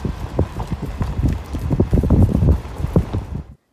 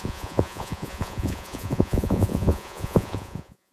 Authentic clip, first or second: first